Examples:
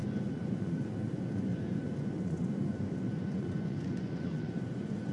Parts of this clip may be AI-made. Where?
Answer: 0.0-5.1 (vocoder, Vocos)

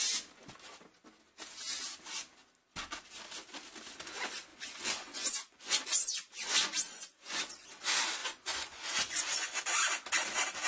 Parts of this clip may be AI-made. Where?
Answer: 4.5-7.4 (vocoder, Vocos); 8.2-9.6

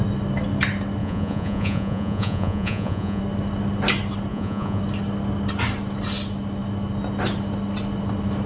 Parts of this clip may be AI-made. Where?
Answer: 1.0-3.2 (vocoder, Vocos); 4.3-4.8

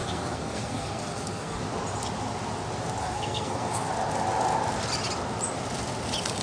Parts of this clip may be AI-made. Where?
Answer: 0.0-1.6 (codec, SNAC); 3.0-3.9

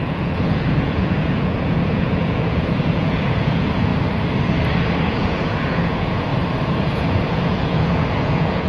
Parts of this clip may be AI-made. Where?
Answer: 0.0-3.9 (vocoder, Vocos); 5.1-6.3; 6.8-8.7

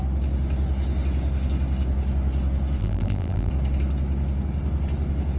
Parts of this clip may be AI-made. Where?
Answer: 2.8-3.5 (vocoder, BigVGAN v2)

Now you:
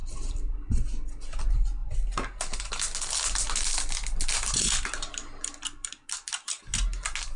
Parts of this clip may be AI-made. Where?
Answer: 0.0-0.7 (vocoder, BigVGAN v2); 5.8-6.6

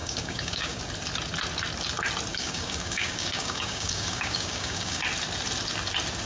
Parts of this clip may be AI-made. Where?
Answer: 0.0-0.8 (codec, DAC); 2.3-5.0